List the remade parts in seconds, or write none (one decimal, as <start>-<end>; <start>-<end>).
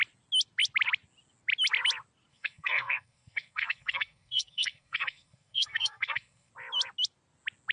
2.3-6.5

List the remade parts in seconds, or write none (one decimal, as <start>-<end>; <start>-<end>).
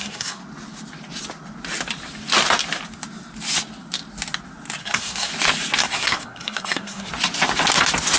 0.0-0.4; 4.8-5.3; 5.8-7.1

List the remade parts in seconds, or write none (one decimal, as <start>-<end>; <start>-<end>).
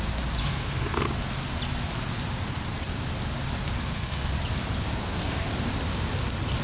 0.4-1.0; 3.8-4.3; 5.0-5.5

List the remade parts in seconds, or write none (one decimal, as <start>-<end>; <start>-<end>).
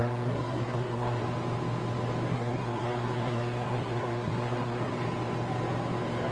0.0-1.2; 2.3-4.9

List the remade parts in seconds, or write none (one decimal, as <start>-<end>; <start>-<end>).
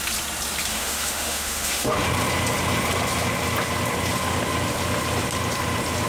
0.7-2.0